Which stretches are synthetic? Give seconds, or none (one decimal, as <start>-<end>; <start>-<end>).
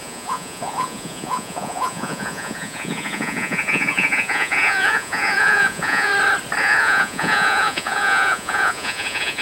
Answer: 0.0-6.1; 6.6-9.4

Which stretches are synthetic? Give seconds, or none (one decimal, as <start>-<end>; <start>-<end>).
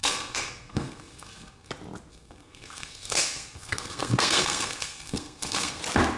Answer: 0.0-1.7; 2.1-5.8